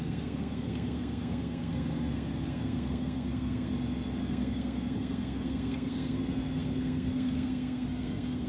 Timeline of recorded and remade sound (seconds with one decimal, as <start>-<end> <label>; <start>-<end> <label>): 0.0-3.7 remade; 3.7-4.2 recorded; 4.2-8.5 remade